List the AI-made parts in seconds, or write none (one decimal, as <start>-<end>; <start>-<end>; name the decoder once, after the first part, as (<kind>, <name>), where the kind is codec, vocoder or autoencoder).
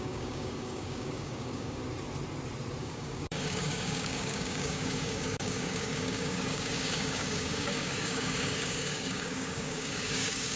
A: 0.0-1.8 (codec, DAC); 2.8-10.6